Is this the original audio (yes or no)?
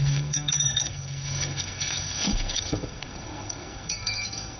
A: no